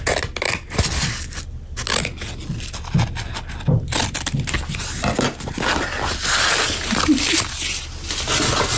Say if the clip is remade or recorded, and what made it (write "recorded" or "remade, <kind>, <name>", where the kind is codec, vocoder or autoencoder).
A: recorded